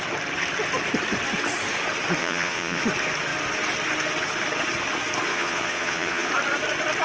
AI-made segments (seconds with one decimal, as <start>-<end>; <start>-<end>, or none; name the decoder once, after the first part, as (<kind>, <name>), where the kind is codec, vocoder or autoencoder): 2.2-2.8 (vocoder, Vocos); 5.3-6.3